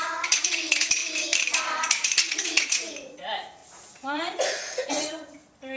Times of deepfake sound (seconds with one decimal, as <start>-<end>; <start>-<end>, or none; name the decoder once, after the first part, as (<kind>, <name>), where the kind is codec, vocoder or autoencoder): 0.0-1.0 (vocoder, Vocos); 1.5-5.8